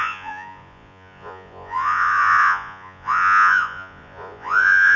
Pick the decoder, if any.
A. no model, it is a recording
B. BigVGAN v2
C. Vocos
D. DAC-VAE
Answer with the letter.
C